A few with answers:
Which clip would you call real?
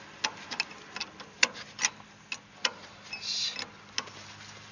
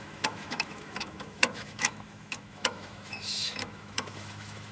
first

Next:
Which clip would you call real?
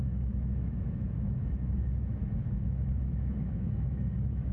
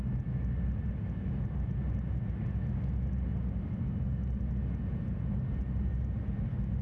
second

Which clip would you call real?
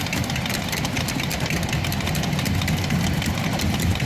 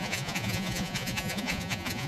first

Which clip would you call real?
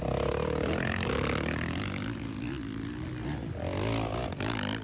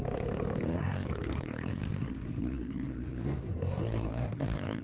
first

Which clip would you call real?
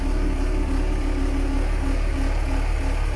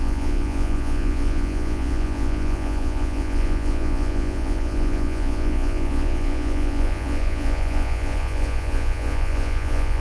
first